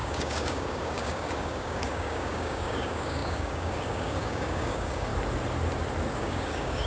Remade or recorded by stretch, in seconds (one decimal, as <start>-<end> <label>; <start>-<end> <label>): 0.0-5.1 remade; 5.1-6.1 recorded; 6.1-6.9 remade